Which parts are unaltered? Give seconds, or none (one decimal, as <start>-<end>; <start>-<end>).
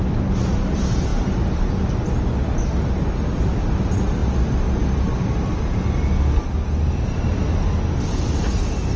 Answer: 0.0-9.0